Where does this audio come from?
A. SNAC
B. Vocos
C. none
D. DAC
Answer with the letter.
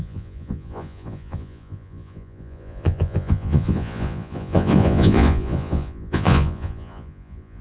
B